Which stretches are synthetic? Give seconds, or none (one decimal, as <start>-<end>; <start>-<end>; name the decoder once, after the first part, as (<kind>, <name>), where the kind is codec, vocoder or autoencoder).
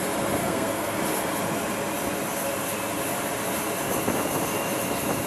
0.4-1.0 (codec, SNAC)